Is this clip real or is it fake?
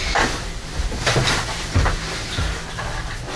real